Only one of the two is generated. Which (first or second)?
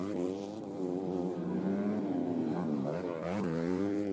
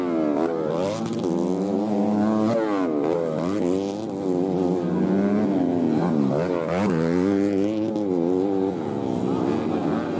first